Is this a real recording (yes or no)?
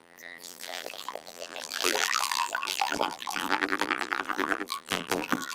no